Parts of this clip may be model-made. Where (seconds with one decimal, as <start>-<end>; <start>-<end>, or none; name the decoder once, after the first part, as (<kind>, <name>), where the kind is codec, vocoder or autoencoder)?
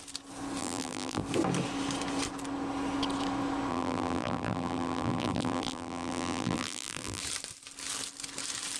0.6-1.2 (vocoder, BigVGAN v2); 3.7-7.2